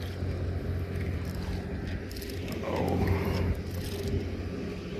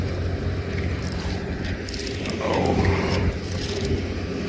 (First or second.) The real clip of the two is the first